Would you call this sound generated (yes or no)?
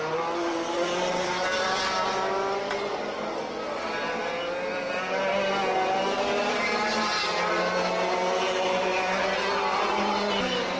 no